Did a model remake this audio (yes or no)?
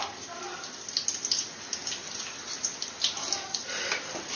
no